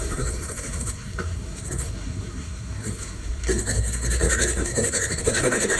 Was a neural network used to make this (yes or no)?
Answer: yes